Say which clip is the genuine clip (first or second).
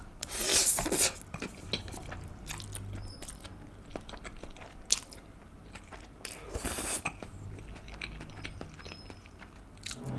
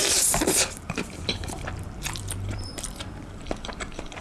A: first